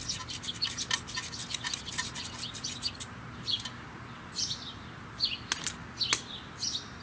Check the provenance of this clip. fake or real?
real